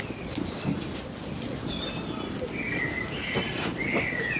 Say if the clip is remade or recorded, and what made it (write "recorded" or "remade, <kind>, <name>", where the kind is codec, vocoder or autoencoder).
recorded